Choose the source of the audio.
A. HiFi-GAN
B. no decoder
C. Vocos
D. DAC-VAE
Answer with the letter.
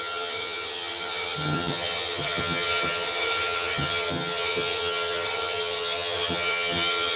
A